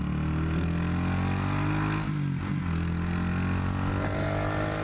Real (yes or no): yes